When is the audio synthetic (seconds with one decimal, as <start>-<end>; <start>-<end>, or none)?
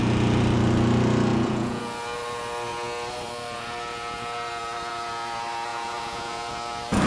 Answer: 1.3-1.8; 5.7-6.5